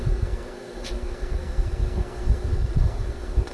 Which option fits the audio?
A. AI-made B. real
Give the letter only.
A